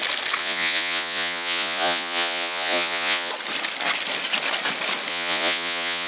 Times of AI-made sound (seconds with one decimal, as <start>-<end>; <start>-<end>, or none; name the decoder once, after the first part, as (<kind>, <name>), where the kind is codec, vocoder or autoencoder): 0.4-3.3 (vocoder, Vocos); 5.1-6.1